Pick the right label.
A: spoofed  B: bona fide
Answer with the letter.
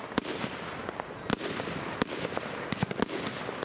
B